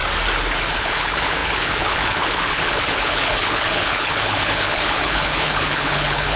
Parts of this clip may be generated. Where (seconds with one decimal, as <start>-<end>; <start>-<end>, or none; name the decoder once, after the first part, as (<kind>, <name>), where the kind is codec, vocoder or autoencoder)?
0.7-6.4 (codec, HILCodec)